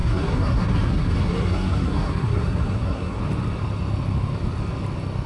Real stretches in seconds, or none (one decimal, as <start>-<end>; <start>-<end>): 3.2-5.3